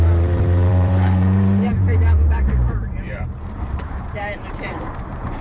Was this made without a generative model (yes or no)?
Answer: no